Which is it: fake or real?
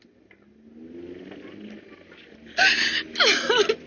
real